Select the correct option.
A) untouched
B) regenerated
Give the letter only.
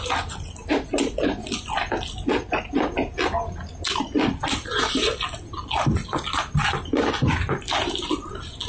A